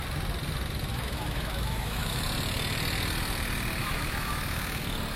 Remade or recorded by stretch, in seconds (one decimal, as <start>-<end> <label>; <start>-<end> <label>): 0.0-0.9 recorded; 0.9-2.2 remade; 2.2-3.8 recorded; 3.8-4.8 remade; 4.8-5.2 recorded